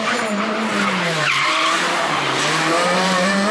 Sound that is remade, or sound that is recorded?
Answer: remade